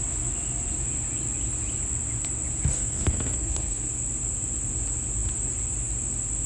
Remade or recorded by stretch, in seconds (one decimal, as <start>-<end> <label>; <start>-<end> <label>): 0.0-2.7 recorded; 2.7-3.9 remade; 3.9-6.5 recorded